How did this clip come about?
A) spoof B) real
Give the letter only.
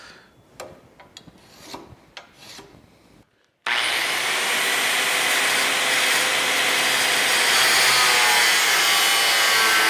B